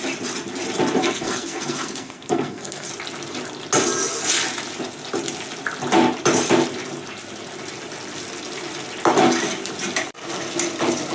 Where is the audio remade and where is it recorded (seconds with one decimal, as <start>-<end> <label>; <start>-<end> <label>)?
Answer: 0.0-1.0 recorded; 1.0-2.9 remade; 2.9-11.1 recorded

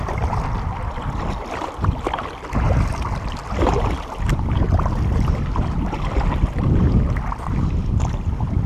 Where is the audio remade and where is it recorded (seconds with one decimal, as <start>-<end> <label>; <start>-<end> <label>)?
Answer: 0.0-8.7 recorded

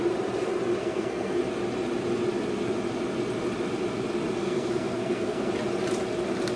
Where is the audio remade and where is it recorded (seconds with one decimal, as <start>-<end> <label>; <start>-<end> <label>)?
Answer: 0.0-0.8 recorded; 0.8-1.4 remade; 1.4-4.4 recorded; 4.4-5.5 remade; 5.5-6.6 recorded

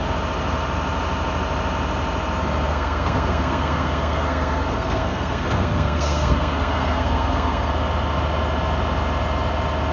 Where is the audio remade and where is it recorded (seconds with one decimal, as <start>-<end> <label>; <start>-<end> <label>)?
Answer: 0.0-2.7 recorded; 2.7-7.7 remade; 7.7-9.9 recorded

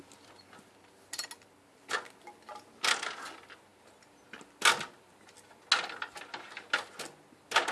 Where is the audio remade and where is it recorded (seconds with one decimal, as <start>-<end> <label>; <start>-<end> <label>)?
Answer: 0.0-7.7 recorded